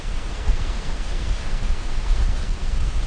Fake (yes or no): yes